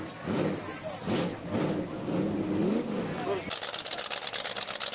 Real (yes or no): yes